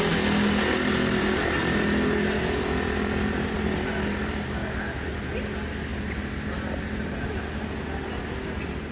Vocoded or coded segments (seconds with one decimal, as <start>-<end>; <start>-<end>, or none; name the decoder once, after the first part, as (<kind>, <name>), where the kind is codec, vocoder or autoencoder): none